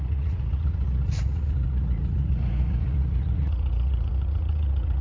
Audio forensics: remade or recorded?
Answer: remade